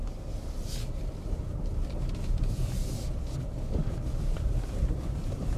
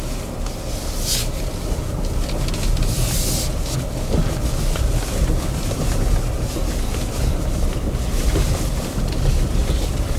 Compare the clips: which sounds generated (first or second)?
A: first